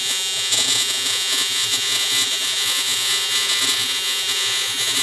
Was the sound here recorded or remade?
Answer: remade